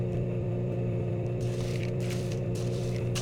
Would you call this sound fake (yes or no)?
yes